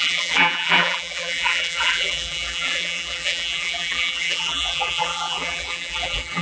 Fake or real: fake